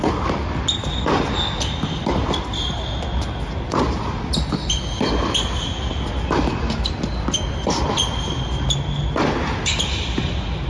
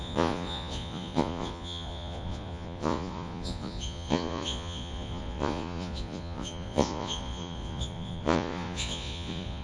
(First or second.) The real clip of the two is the first